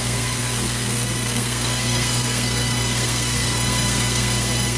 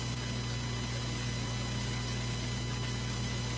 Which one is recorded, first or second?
second